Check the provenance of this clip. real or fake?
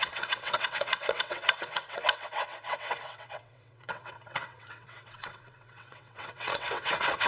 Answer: fake